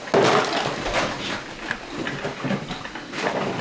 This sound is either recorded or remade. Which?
recorded